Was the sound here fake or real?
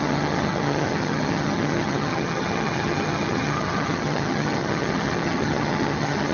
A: fake